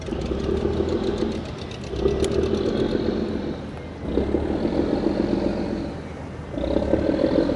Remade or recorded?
recorded